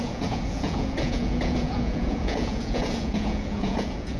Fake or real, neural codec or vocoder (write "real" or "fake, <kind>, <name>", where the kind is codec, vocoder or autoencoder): fake, vocoder, Vocos